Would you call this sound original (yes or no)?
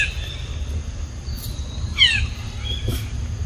yes